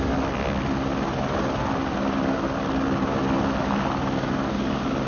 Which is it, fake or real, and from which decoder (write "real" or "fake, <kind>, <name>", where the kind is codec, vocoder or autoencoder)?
real